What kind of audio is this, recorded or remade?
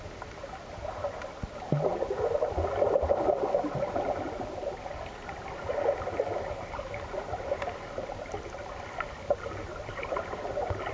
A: recorded